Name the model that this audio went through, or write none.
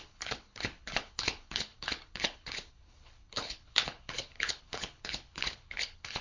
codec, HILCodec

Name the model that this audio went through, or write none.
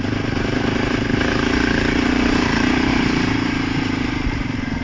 vocoder, BigVGAN v2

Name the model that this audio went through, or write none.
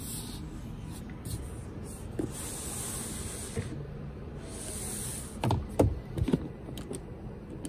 none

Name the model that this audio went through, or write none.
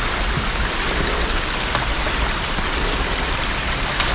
none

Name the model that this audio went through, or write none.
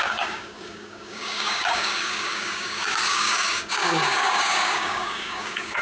codec, DAC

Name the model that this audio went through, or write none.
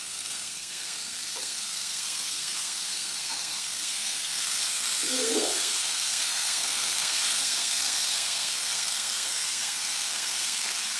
codec, SNAC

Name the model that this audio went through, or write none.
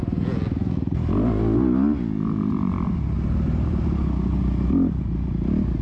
none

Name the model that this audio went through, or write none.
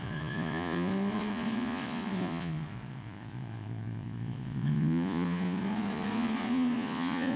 vocoder, Vocos